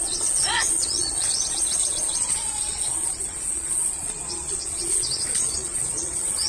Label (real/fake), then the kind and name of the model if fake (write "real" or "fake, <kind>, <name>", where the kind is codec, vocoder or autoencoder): fake, vocoder, Vocos